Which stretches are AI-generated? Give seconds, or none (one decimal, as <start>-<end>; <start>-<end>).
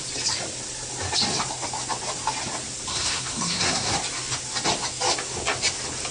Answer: 2.9-3.9